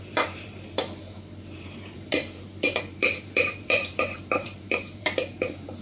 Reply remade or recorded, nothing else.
remade